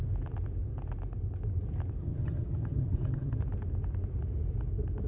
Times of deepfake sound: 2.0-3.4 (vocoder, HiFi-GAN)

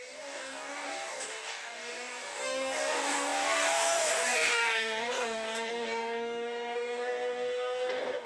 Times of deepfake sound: 0.0-8.3 (codec, DAC)

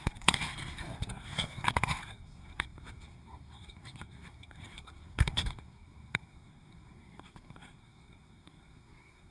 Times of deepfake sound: 0.0-9.3 (codec, SNAC)

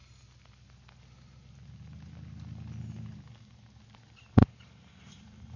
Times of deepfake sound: 4.4-5.6 (vocoder, BigVGAN v2)